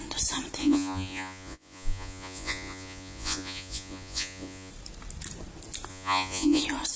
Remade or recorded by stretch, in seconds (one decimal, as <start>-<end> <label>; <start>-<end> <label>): 0.0-0.6 recorded; 0.6-4.7 remade; 4.7-5.9 recorded; 5.9-6.6 remade; 6.6-7.0 recorded